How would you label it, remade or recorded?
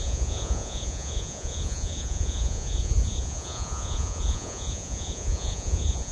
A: remade